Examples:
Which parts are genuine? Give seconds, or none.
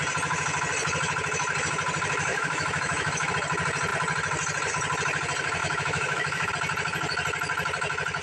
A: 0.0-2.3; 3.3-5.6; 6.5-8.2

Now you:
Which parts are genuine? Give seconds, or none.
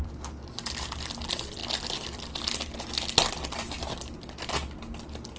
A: 0.0-5.4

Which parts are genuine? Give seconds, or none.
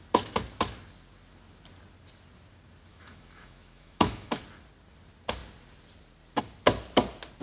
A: 0.0-2.9; 4.4-7.4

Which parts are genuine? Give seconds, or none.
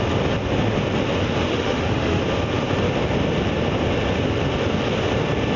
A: 0.0-1.5; 2.2-5.6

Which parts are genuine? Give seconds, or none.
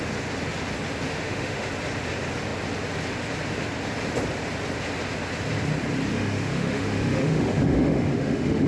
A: 0.0-1.1; 1.7-6.1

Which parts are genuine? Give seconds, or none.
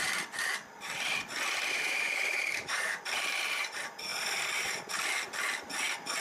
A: 0.0-1.7; 3.0-6.2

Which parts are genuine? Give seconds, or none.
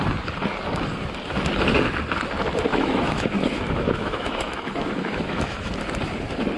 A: 0.0-2.7; 5.7-6.6